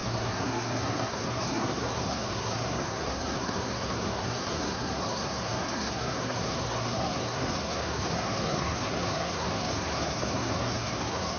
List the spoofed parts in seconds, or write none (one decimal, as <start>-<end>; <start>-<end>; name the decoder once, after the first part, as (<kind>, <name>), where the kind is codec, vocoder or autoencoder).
0.0-11.4 (codec, SNAC)